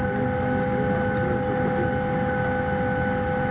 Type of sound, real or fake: real